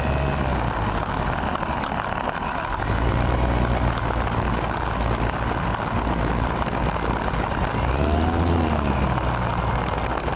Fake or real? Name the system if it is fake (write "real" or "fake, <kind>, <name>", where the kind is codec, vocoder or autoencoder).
real